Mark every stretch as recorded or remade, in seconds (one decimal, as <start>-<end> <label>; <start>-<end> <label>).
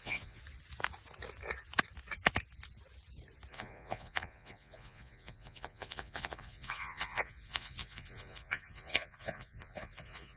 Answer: 0.0-0.4 remade; 0.4-3.5 recorded; 3.5-10.4 remade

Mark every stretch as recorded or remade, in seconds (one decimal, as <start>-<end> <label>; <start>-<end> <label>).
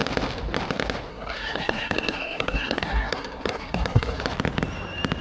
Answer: 0.0-1.1 recorded; 1.1-4.2 remade; 4.2-5.2 recorded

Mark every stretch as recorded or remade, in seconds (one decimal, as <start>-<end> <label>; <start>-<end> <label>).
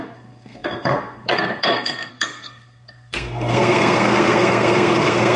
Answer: 0.0-5.4 remade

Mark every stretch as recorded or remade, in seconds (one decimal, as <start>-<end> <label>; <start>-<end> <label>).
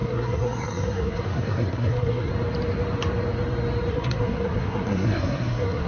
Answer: 0.0-2.3 remade; 2.3-3.9 recorded; 3.9-5.9 remade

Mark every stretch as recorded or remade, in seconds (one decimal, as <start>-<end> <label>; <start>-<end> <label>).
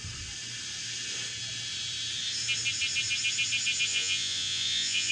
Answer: 0.0-3.9 recorded; 3.9-5.1 remade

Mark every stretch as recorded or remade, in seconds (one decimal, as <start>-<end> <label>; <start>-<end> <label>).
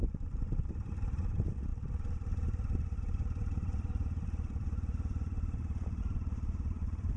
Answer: 0.0-7.2 remade